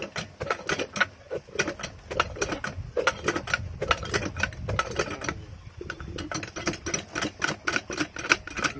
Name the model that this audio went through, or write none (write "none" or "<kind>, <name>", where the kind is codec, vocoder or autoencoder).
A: none